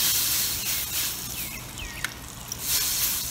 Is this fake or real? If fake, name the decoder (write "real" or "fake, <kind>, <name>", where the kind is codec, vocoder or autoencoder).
real